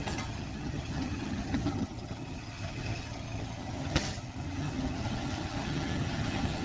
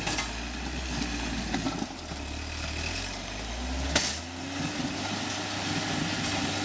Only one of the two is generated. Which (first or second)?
first